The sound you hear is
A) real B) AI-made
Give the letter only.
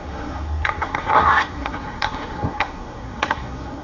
B